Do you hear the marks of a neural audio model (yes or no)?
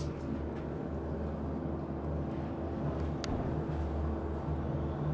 no